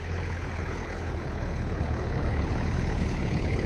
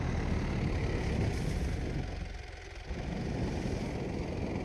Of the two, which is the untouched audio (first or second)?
second